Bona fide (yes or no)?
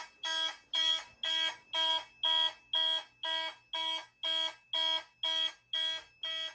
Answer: yes